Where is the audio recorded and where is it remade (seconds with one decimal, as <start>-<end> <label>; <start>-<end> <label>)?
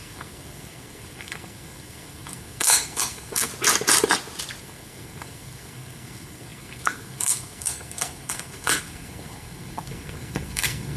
0.0-3.5 remade; 3.5-4.6 recorded; 4.6-11.0 remade